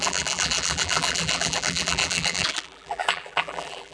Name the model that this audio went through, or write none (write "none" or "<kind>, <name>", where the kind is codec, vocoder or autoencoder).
vocoder, BigVGAN v2